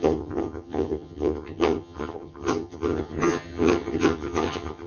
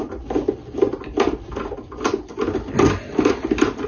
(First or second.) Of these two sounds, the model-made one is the first